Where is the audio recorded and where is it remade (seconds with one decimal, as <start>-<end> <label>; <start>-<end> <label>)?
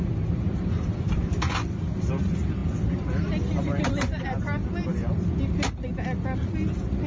0.0-7.1 recorded